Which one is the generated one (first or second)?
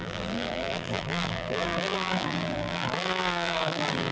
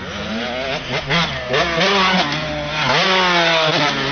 first